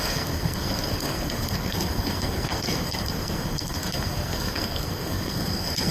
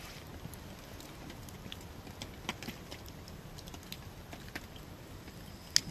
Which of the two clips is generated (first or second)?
first